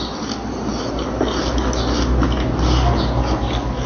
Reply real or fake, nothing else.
real